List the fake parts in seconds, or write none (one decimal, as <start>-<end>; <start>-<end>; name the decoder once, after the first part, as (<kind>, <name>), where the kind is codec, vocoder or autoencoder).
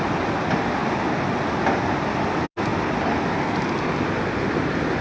none